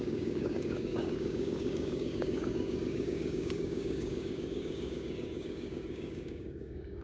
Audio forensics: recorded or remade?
remade